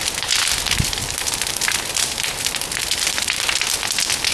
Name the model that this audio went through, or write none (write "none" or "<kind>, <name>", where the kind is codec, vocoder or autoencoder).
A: none